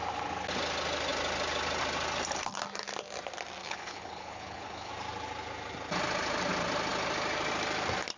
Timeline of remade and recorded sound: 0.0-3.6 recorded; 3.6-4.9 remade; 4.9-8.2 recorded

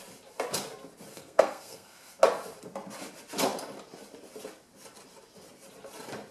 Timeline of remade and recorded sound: 0.0-1.1 recorded; 1.1-2.2 remade; 2.2-6.3 recorded

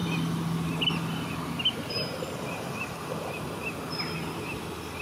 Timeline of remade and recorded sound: 0.0-5.0 recorded

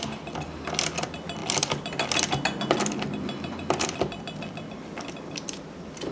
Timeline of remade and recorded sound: 0.0-6.1 recorded

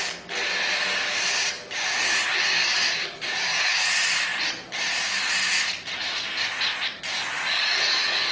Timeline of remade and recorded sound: 0.0-2.5 recorded; 2.5-3.9 remade; 3.9-7.4 recorded; 7.4-8.3 remade

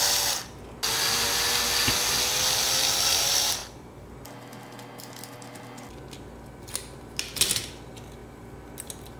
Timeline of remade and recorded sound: 0.0-3.6 recorded; 3.6-4.1 remade; 4.1-9.2 recorded

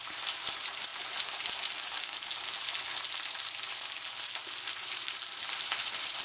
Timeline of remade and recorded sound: 0.0-0.9 remade; 0.9-4.6 recorded; 4.6-6.2 remade